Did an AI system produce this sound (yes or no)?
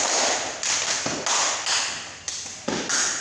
no